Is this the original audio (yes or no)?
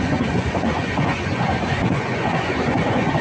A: no